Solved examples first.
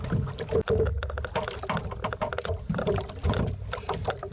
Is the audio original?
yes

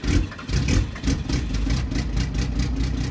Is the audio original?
yes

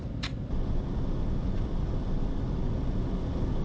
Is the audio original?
yes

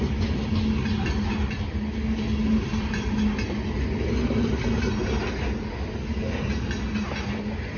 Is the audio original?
yes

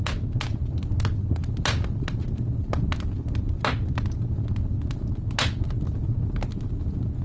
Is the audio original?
yes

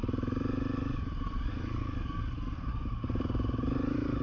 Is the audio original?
yes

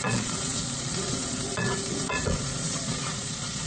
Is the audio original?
no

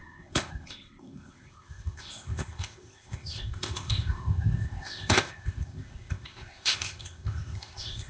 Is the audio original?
no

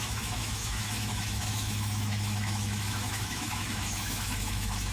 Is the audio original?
no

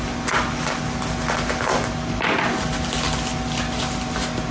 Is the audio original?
yes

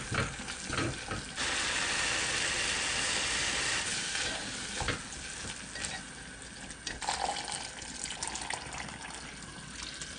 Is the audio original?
yes